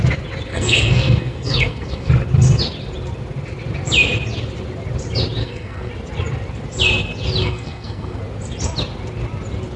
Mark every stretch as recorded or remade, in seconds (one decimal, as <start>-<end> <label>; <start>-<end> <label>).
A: 0.0-0.5 recorded; 0.5-2.1 remade; 2.1-5.4 recorded; 5.4-5.9 remade; 5.9-7.4 recorded; 7.4-8.2 remade; 8.2-9.8 recorded